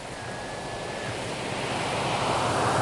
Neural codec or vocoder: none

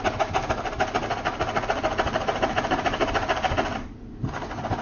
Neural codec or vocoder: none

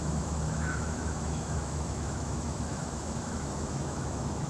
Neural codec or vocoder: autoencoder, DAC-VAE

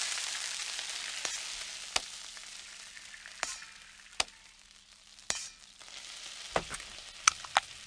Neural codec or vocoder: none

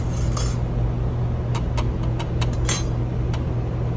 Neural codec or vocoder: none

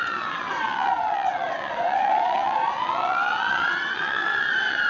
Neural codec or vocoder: vocoder, WaveNeXt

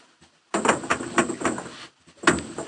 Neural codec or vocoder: none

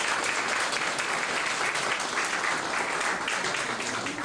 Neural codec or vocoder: none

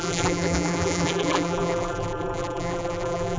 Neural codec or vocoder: vocoder, BigVGAN v2